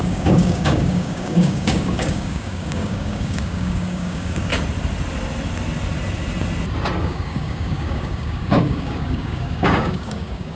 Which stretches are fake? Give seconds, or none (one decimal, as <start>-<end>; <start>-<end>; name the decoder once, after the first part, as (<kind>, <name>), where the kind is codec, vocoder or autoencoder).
0.0-4.5 (codec, DAC); 7.0-10.6